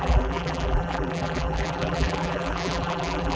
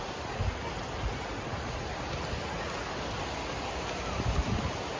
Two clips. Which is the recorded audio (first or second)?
second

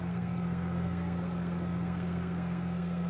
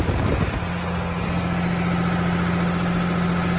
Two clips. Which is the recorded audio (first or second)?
second